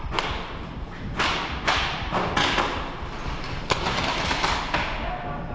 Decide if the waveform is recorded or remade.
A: recorded